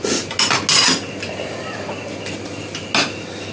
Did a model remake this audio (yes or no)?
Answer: no